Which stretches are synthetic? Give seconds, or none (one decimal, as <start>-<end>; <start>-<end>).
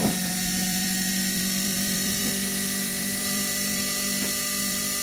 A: 0.0-3.8; 4.6-5.0